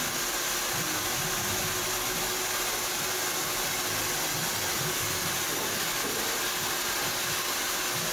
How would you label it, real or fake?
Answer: real